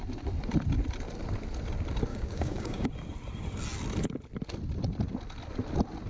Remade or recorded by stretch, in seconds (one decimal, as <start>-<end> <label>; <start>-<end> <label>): 0.0-2.1 recorded; 2.1-2.9 remade; 2.9-6.1 recorded